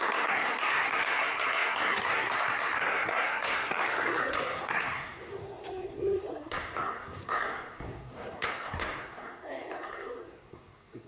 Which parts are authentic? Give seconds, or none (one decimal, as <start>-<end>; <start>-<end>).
none